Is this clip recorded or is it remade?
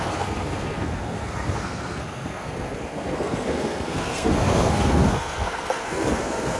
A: remade